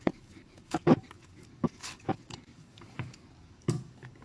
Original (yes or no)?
no